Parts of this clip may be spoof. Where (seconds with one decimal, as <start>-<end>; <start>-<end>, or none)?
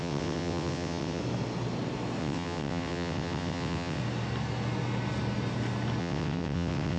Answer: 0.0-1.2; 2.2-4.0; 6.0-7.0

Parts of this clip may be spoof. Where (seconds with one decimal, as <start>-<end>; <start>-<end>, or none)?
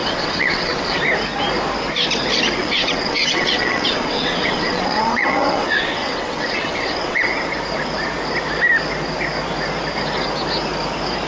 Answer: 0.0-1.0; 2.6-7.2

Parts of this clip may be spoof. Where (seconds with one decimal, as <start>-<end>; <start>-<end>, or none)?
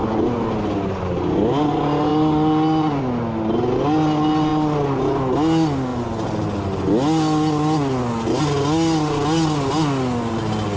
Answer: none